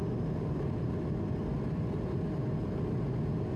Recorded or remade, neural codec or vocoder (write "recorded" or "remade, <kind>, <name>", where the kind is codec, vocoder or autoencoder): recorded